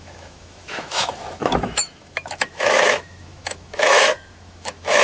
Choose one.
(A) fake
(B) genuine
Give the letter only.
A